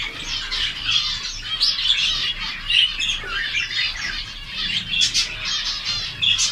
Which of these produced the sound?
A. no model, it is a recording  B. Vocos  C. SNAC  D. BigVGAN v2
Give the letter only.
A